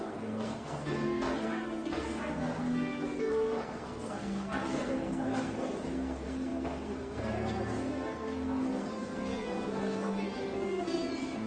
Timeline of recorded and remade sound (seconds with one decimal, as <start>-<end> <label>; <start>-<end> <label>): 0.0-11.5 remade